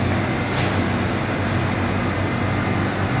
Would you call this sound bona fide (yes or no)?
yes